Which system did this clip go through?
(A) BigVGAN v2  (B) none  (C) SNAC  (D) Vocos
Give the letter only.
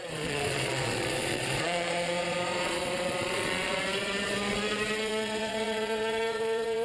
D